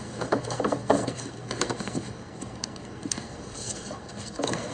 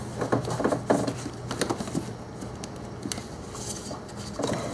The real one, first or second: second